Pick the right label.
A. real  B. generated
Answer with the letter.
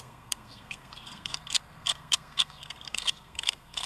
B